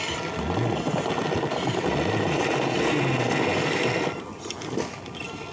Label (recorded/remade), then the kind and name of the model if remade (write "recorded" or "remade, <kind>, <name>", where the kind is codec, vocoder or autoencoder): recorded